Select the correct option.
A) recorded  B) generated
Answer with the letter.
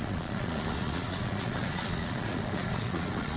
B